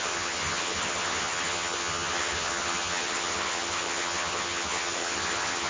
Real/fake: fake